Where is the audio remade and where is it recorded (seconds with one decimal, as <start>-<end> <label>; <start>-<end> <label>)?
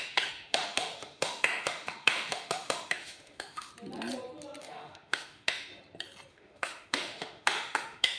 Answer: 0.0-3.7 remade; 3.7-4.6 recorded; 4.6-5.7 remade; 5.7-6.3 recorded; 6.3-8.2 remade